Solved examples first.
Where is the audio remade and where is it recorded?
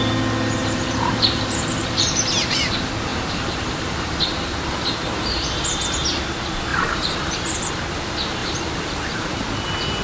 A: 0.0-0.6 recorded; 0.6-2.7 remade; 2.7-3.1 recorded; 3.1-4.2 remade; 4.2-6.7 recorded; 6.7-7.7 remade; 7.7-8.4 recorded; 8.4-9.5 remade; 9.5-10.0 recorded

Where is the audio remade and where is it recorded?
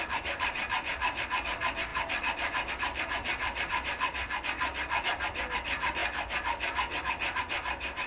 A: 0.0-8.1 remade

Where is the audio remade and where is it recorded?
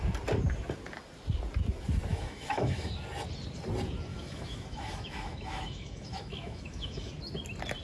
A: 0.0-2.1 recorded; 2.1-2.9 remade; 2.9-4.1 recorded; 4.1-7.1 remade; 7.1-7.8 recorded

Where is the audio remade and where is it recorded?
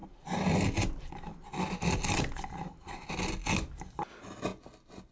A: 0.0-5.1 recorded